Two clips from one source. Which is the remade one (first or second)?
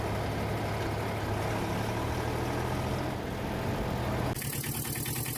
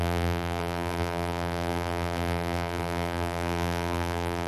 second